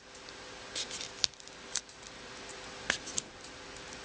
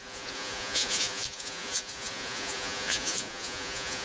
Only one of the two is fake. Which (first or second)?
second